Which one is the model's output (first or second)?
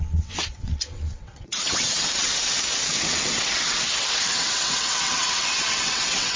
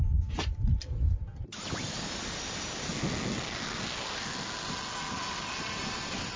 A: first